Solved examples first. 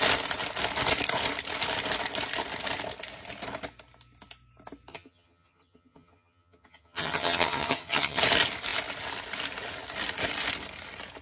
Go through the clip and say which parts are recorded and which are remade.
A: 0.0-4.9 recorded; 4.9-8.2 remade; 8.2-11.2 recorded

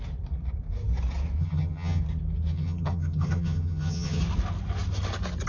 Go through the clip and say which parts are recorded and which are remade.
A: 0.0-1.4 recorded; 1.4-2.0 remade; 2.0-2.5 recorded; 2.5-4.2 remade; 4.2-5.5 recorded

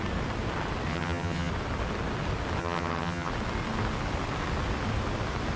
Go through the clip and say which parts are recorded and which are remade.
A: 0.0-0.9 recorded; 0.9-1.5 remade; 1.5-2.6 recorded; 2.6-3.3 remade; 3.3-5.6 recorded

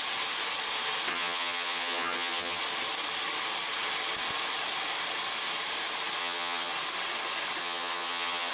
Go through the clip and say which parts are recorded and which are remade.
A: 0.0-1.1 recorded; 1.1-2.6 remade; 2.6-6.2 recorded; 6.2-6.7 remade; 6.7-7.6 recorded; 7.6-8.5 remade

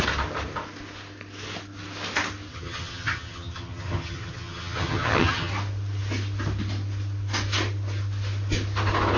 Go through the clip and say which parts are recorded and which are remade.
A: 0.0-2.5 recorded; 2.5-5.5 remade; 5.5-9.2 recorded

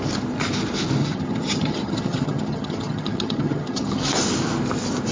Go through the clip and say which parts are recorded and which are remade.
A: 0.0-1.0 recorded; 1.0-4.1 remade; 4.1-5.1 recorded

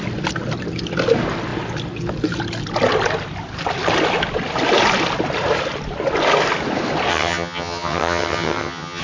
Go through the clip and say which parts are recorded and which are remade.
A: 0.0-7.1 recorded; 7.1-9.0 remade